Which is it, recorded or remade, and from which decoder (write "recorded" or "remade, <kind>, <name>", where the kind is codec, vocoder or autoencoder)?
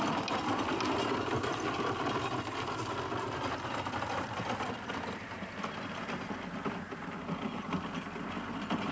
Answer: recorded